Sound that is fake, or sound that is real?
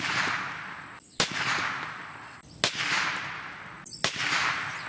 real